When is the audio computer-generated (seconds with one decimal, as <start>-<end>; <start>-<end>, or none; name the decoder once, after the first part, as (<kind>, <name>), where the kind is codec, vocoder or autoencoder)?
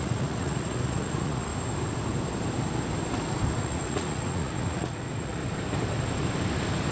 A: 0.0-1.5 (vocoder, Vocos); 3.6-5.4